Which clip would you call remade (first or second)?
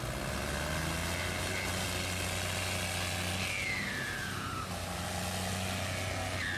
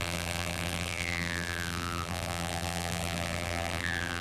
second